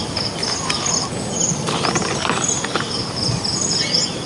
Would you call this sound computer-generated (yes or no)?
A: no